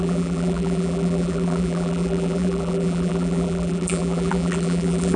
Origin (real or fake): fake